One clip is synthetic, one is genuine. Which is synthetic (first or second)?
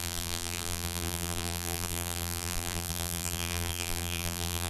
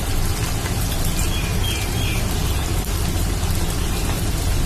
first